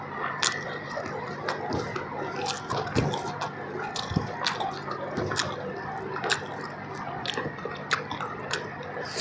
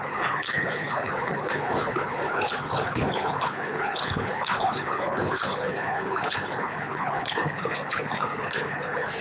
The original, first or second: first